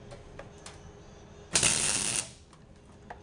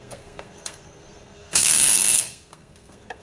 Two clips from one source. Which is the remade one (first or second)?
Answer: second